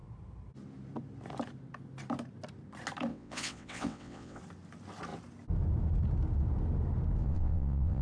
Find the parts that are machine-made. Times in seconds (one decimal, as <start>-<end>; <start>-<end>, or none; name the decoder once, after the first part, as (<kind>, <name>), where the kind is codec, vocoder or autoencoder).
3.1-4.4 (vocoder, WaveNeXt); 7.2-8.0

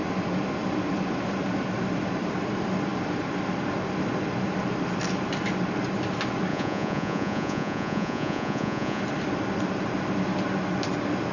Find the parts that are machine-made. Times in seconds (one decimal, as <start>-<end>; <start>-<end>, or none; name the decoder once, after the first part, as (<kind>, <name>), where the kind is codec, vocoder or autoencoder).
6.5-9.0 (vocoder, Vocos)

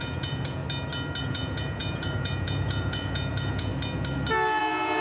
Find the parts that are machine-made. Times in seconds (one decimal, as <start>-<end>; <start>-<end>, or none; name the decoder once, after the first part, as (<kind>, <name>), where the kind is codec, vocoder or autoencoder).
0.0-0.6 (vocoder, Vocos); 1.2-3.7; 4.6-5.0

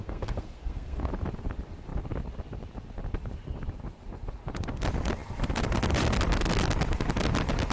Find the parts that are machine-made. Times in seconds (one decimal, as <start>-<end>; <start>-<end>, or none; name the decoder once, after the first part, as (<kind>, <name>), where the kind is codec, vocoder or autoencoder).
0.0-1.1 (codec, SNAC)

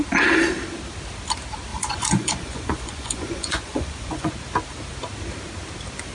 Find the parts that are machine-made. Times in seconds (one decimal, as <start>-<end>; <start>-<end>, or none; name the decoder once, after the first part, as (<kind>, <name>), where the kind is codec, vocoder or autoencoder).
1.7-4.3 (vocoder, Vocos)

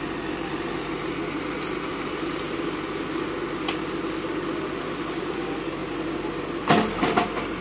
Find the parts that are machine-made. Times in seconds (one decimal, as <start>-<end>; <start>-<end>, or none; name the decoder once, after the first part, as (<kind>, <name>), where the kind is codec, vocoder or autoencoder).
none

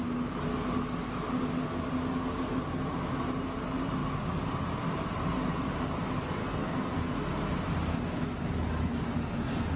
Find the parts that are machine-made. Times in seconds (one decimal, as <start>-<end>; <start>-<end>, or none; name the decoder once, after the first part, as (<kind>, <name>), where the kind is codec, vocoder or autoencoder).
6.4-7.0 (codec, SNAC)